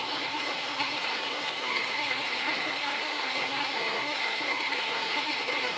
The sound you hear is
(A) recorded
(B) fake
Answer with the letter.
B